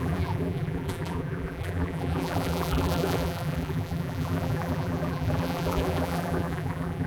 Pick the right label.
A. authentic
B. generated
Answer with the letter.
B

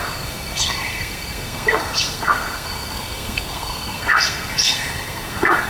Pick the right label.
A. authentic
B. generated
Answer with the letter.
B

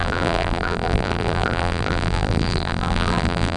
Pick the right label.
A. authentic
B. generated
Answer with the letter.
B